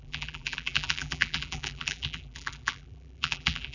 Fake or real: fake